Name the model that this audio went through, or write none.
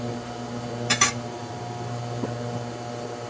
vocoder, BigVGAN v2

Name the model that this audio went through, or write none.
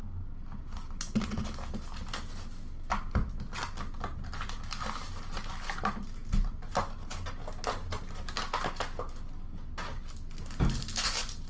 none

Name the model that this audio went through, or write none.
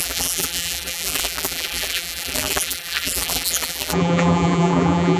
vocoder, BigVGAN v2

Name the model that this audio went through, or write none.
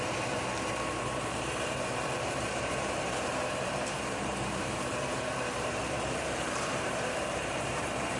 vocoder, BigVGAN v2